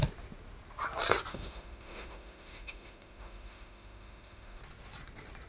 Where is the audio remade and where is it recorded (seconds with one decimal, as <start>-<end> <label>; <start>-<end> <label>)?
0.0-1.3 recorded; 1.3-4.6 remade; 4.6-5.5 recorded